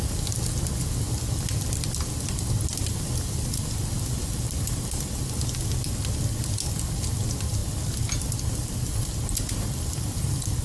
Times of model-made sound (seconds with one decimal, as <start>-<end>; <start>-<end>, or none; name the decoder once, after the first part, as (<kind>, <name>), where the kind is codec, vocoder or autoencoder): none